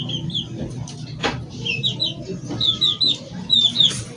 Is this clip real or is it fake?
fake